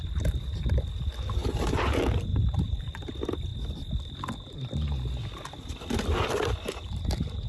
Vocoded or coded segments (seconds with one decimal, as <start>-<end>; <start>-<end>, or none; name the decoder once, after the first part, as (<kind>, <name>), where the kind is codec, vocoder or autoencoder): 1.4-1.9 (vocoder, BigVGAN v2); 2.3-3.1